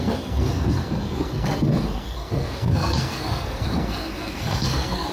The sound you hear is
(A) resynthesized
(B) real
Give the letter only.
A